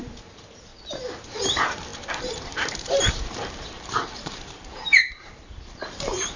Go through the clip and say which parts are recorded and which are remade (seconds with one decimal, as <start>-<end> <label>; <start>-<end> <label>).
0.0-0.7 remade; 0.7-1.3 recorded; 1.3-6.4 remade